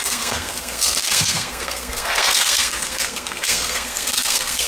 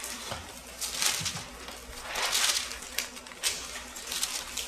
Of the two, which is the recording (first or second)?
second